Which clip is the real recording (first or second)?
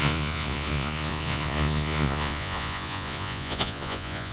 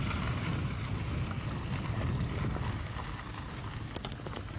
second